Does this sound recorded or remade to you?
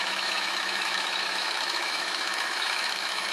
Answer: remade